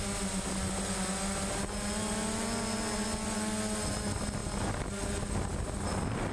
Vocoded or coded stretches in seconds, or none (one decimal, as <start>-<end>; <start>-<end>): none